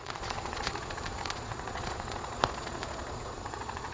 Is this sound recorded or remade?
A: remade